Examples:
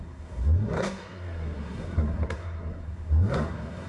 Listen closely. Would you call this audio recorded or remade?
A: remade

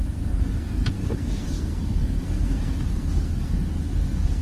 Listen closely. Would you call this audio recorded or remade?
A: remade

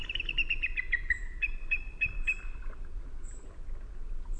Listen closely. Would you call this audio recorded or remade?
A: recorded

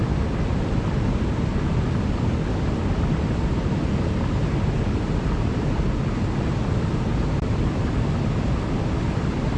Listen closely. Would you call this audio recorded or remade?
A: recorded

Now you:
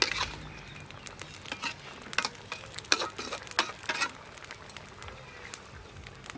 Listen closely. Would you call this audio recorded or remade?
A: recorded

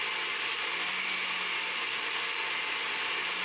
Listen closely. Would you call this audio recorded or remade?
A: recorded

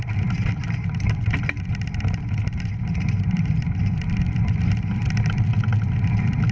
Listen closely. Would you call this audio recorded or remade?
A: recorded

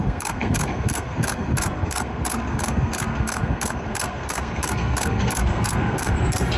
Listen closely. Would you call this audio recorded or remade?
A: remade